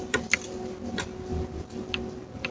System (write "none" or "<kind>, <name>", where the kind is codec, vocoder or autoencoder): none